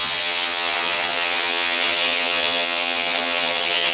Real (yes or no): no